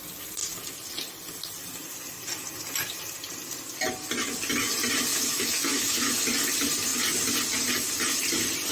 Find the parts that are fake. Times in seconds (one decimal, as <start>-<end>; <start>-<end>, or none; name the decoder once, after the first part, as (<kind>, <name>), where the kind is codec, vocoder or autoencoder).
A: 5.1-6.2 (autoencoder, DAC-VAE)